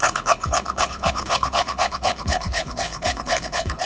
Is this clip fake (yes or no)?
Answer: yes